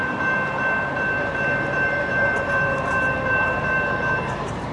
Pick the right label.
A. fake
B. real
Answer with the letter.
A